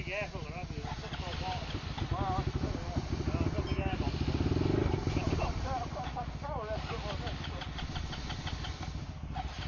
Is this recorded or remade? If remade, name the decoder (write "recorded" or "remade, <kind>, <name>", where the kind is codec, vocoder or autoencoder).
recorded